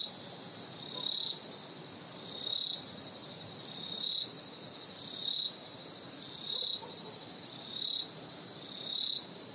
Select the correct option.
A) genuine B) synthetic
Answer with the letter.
A